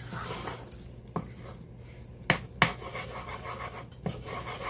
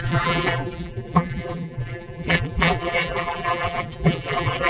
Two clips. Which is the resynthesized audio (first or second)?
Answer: second